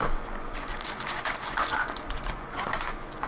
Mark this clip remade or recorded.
remade